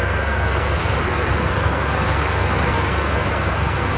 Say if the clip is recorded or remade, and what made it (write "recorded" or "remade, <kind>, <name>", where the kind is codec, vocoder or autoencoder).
remade, codec, SNAC